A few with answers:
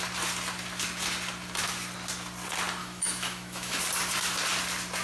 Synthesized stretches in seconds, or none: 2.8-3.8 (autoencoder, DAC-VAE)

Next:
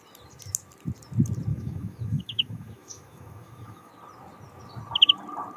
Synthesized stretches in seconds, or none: 1.5-3.9 (autoencoder, DAC-VAE)

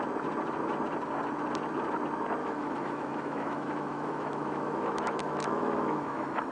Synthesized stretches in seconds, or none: 2.4-6.5 (autoencoder, DAC-VAE)

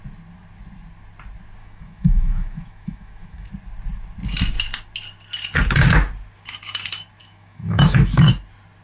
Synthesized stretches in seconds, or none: 1.6-3.5 (autoencoder, DAC-VAE); 7.2-8.3

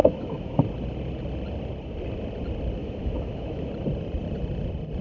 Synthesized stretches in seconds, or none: 0.0-0.6 (autoencoder, DAC-VAE); 2.8-3.7